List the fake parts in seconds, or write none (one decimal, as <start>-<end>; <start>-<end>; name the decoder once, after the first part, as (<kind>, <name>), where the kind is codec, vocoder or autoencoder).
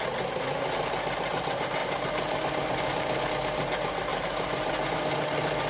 1.8-3.3 (vocoder, BigVGAN v2); 4.1-5.7